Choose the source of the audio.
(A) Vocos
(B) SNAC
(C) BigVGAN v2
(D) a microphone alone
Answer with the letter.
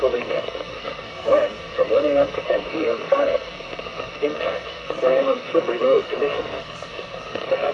B